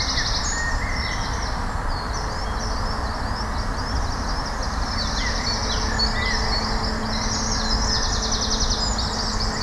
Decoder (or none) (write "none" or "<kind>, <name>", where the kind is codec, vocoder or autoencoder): none